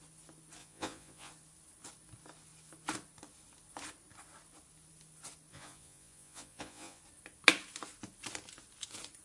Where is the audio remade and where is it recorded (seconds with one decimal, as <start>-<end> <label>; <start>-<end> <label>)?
0.0-0.6 recorded; 0.6-1.3 remade; 1.3-5.5 recorded; 5.5-7.0 remade; 7.0-9.2 recorded